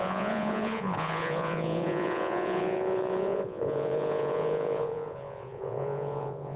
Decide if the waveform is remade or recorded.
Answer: remade